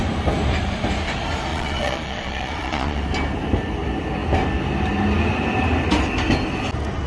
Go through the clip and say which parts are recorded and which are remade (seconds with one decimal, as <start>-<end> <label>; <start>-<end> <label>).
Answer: 0.0-1.5 recorded; 1.5-3.0 remade; 3.0-7.1 recorded